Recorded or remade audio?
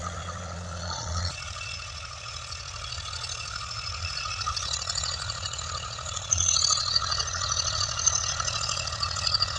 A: remade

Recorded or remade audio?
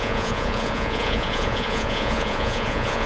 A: remade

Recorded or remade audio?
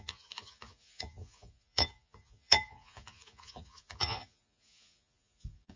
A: remade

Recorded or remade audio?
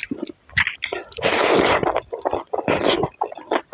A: recorded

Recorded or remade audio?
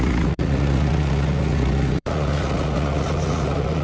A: remade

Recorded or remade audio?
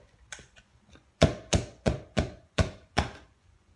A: remade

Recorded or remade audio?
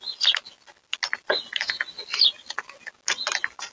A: recorded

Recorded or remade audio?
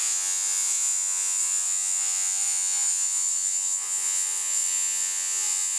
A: remade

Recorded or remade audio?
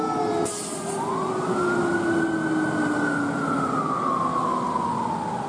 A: recorded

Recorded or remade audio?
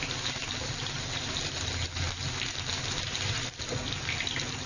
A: recorded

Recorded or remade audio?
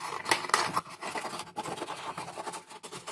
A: recorded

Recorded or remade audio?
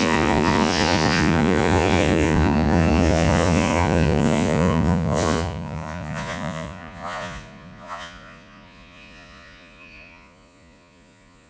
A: remade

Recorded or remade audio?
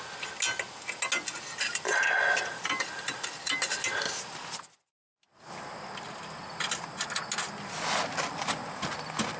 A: recorded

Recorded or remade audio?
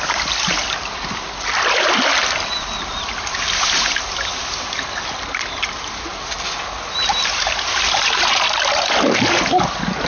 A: recorded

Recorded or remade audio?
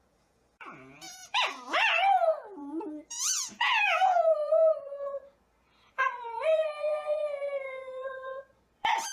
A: remade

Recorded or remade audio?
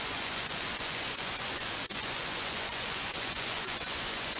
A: remade